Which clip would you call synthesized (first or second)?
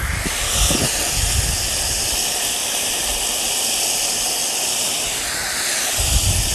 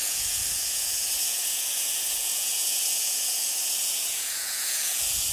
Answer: second